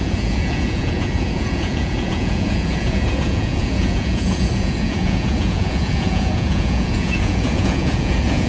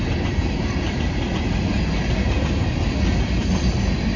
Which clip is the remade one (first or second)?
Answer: first